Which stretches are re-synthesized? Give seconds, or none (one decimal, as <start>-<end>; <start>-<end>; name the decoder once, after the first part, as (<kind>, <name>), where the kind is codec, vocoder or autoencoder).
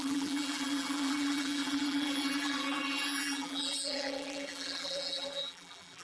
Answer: 0.0-6.0 (vocoder, BigVGAN v2)